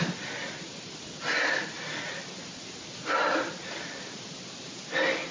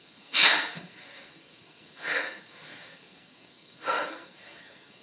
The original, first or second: first